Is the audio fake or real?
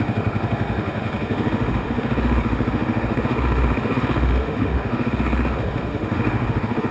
fake